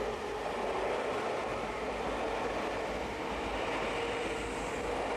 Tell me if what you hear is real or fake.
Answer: real